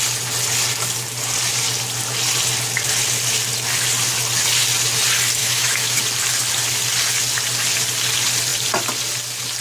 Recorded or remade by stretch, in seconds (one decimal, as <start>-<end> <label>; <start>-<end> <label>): 0.0-5.4 recorded; 5.4-6.0 remade; 6.0-9.6 recorded

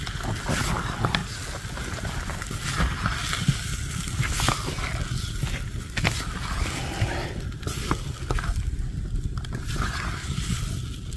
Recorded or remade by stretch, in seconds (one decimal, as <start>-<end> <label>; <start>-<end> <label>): 0.0-11.2 recorded